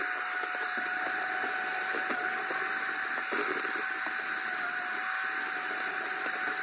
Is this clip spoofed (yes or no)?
no